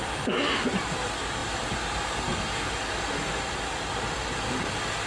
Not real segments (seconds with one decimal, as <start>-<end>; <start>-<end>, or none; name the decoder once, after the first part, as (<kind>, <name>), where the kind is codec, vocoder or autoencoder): none